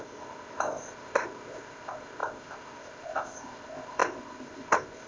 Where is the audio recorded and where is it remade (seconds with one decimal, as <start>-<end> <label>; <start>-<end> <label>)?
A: 0.0-5.1 remade